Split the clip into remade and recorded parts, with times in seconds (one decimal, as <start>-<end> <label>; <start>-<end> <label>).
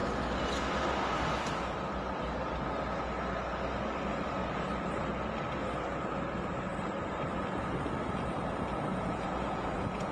0.0-8.9 recorded; 8.9-10.1 remade